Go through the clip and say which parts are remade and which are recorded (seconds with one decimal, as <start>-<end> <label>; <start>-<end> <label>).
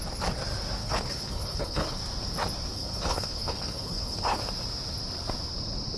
0.0-0.8 recorded; 0.8-2.0 remade; 2.0-2.7 recorded; 2.7-4.4 remade; 4.4-6.0 recorded